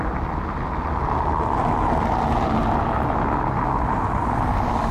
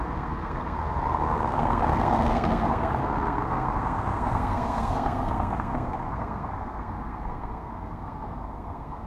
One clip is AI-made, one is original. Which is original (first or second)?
first